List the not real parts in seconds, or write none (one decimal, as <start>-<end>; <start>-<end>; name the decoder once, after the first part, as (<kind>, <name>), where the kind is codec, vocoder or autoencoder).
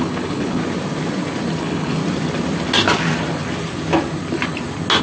0.0-0.6 (codec, HILCodec); 1.6-2.0